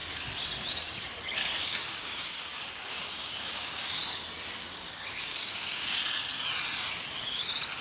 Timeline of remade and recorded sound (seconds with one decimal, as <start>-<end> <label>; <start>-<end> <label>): 0.0-1.4 recorded; 1.4-4.0 remade; 4.0-4.6 recorded; 4.6-6.0 remade; 6.0-7.8 recorded